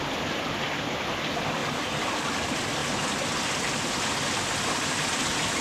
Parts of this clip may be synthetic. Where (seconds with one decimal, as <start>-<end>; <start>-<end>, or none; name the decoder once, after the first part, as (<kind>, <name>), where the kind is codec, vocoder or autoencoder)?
none